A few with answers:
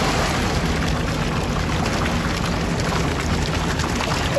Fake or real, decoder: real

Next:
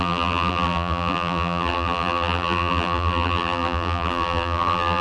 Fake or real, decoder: fake, vocoder, BigVGAN v2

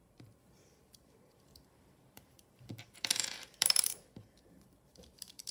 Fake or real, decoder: fake, vocoder, BigVGAN v2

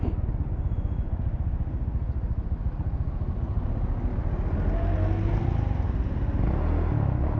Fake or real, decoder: real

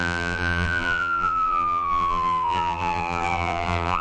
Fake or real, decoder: fake, vocoder, BigVGAN v2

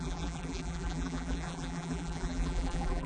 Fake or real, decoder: fake, vocoder, BigVGAN v2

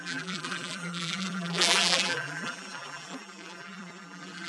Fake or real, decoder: fake, vocoder, BigVGAN v2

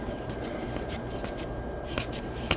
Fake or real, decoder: fake, vocoder, BigVGAN v2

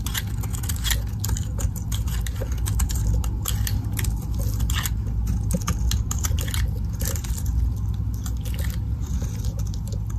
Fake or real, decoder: real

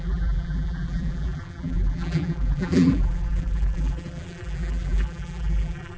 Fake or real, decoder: fake, vocoder, BigVGAN v2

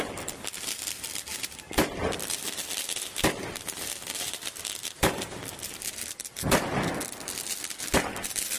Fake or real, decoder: fake, vocoder, BigVGAN v2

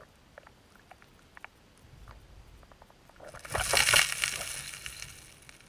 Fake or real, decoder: real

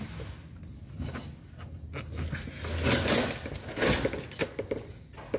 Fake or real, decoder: real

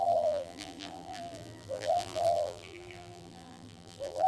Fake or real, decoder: fake, vocoder, BigVGAN v2